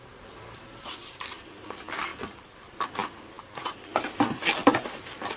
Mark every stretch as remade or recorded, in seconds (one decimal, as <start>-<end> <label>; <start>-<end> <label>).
0.0-5.4 remade

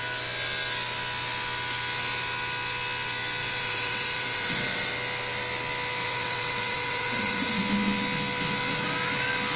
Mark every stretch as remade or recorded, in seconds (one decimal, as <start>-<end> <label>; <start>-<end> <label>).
0.0-3.4 recorded; 3.4-4.9 remade; 4.9-6.0 recorded; 6.0-7.6 remade; 7.6-9.6 recorded

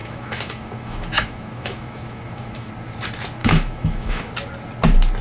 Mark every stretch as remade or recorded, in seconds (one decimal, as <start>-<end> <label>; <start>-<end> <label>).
0.0-2.7 remade; 2.7-3.4 recorded; 3.4-4.3 remade; 4.3-5.2 recorded

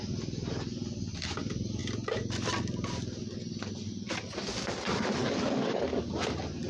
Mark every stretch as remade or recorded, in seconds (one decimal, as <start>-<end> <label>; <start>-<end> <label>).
0.0-5.2 recorded; 5.2-6.1 remade; 6.1-6.7 recorded

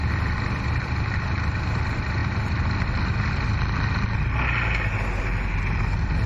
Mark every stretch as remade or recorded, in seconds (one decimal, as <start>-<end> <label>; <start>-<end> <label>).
0.0-6.3 recorded

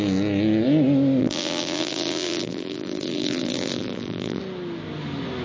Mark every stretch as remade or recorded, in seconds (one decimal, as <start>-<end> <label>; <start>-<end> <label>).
0.0-1.2 recorded; 1.2-4.4 remade; 4.4-5.4 recorded

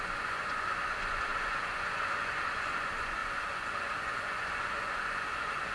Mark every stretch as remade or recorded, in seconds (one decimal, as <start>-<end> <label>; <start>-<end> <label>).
0.0-5.7 remade

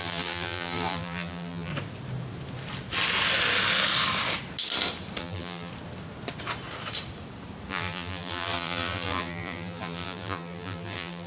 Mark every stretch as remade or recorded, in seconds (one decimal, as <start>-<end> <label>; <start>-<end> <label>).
0.0-1.7 remade; 1.7-5.2 recorded; 5.2-5.7 remade; 5.7-7.7 recorded; 7.7-11.3 remade